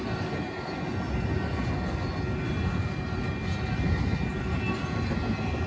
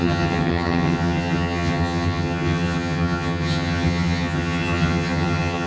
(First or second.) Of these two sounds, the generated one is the second